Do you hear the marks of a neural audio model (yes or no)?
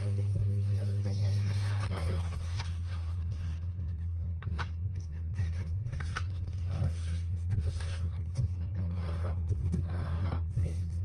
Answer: yes